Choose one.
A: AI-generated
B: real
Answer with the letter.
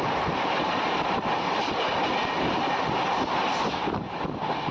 B